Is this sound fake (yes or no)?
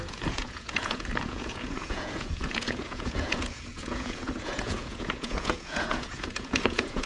yes